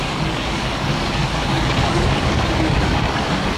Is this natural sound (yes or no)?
no